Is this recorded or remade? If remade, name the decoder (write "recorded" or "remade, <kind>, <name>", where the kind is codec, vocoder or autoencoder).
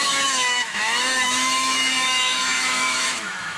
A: remade, autoencoder, DAC-VAE